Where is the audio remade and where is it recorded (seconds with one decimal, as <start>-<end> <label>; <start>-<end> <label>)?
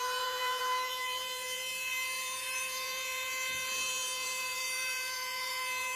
0.0-6.0 remade